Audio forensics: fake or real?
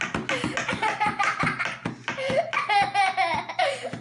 real